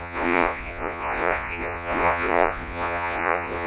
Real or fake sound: fake